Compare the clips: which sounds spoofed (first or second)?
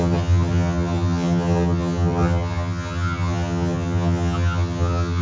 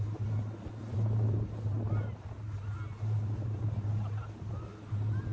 first